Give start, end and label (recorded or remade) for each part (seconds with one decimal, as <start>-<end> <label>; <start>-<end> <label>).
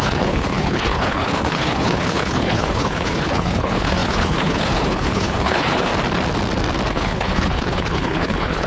0.0-5.9 remade; 5.9-6.9 recorded; 6.9-8.7 remade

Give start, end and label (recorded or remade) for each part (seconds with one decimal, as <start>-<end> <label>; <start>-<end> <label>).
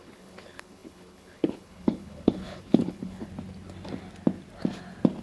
0.0-3.3 remade; 3.3-5.2 recorded